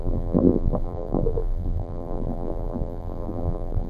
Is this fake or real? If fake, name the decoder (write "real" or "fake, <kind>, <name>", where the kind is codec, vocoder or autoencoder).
fake, vocoder, BigVGAN v2